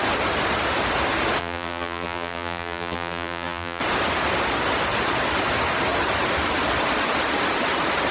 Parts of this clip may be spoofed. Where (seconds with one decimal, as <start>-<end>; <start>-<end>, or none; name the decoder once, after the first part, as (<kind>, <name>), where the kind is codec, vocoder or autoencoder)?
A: 1.4-3.8 (vocoder, BigVGAN v2)